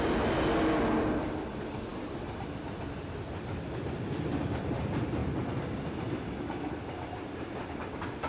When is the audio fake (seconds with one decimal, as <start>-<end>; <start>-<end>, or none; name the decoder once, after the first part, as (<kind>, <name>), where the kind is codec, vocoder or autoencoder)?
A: none

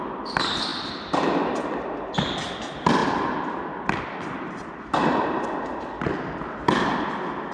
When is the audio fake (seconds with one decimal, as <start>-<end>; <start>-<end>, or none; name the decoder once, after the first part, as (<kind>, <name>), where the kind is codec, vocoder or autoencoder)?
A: none

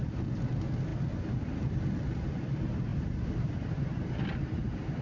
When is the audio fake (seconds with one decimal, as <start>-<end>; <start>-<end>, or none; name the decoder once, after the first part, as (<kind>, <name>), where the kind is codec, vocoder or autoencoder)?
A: none

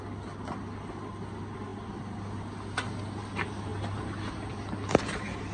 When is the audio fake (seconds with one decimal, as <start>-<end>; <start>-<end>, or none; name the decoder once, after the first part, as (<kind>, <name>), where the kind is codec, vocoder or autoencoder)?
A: none

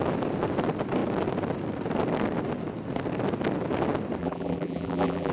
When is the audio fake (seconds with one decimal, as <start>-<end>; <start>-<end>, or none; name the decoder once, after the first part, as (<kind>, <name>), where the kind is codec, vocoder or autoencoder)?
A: 4.2-5.3 (vocoder, BigVGAN v2)